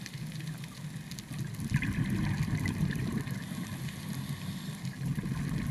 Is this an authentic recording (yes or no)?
yes